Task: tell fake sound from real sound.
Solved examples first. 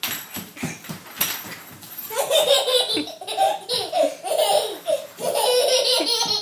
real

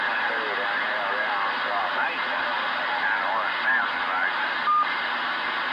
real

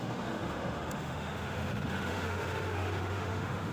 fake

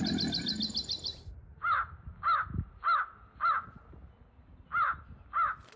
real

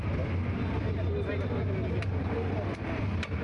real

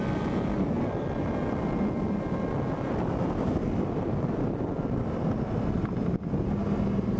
real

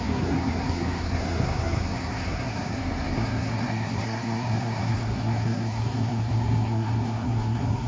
fake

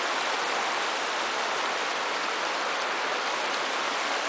real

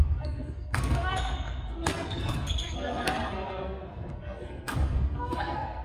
fake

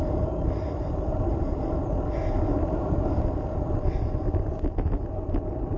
real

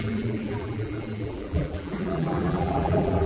fake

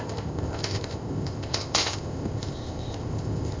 fake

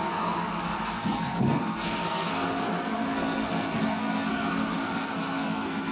fake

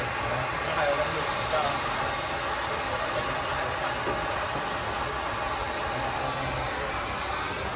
real